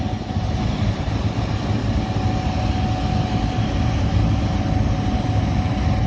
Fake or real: real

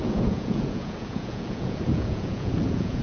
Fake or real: fake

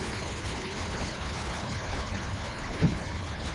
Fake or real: fake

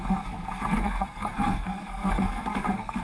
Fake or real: fake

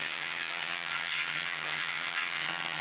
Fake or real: fake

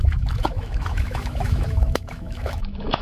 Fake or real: fake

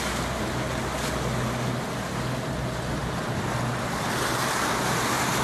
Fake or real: real